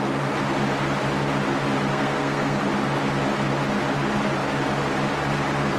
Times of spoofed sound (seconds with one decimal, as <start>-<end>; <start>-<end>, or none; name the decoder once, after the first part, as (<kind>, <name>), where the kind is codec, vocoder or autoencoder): 1.9-2.6 (codec, SNAC)